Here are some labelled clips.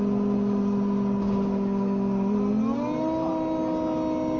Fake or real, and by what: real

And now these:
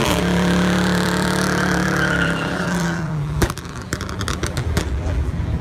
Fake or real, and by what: fake, vocoder, BigVGAN v2